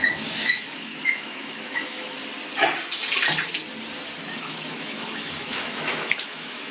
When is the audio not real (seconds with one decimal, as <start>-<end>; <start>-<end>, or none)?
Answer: 0.0-2.2; 4.4-6.7